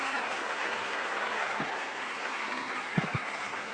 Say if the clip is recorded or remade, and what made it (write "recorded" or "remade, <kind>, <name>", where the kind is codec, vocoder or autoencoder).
remade, codec, SNAC